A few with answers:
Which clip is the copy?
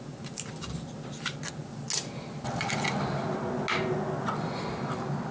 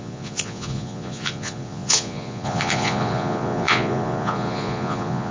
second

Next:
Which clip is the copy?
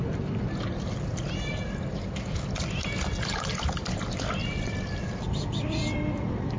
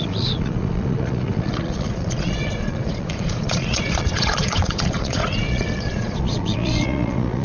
second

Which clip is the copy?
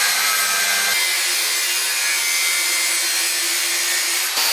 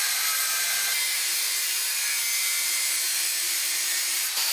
second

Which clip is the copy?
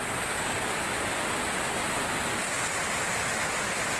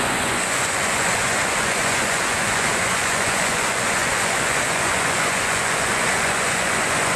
second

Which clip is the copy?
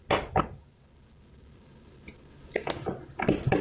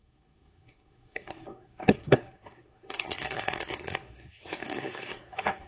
second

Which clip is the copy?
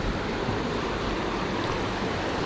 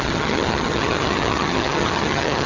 second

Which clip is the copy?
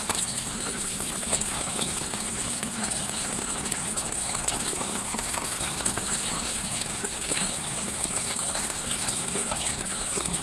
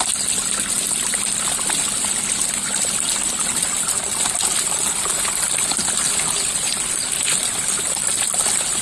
first